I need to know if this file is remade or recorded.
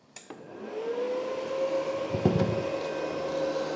recorded